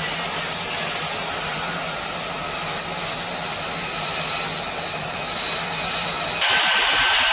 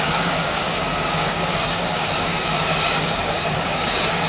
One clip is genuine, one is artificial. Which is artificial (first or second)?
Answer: second